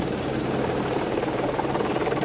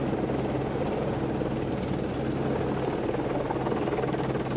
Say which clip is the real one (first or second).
second